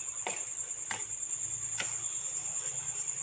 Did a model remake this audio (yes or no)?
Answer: yes